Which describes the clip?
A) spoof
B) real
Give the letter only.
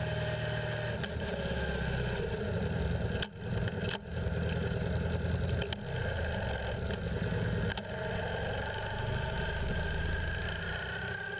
B